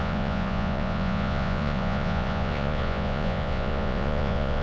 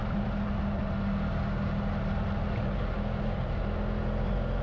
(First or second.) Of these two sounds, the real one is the second